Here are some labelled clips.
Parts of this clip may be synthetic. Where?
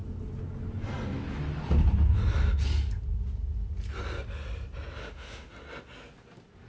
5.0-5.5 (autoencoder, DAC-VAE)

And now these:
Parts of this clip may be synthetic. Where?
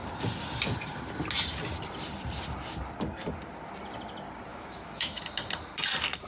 4.5-5.2 (autoencoder, DAC-VAE)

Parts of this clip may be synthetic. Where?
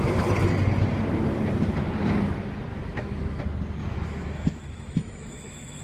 2.7-3.4 (autoencoder, DAC-VAE); 3.8-5.8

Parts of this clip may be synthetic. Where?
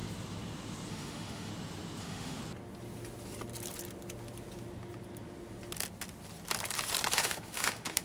0.9-1.5 (autoencoder, DAC-VAE); 2.0-2.4; 7.1-8.0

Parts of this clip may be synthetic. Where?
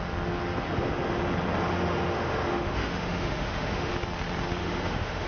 1.7-3.9 (autoencoder, DAC-VAE); 4.6-5.3